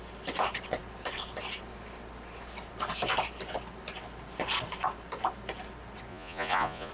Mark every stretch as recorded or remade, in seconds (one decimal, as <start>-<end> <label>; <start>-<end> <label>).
0.0-6.1 recorded; 6.1-6.9 remade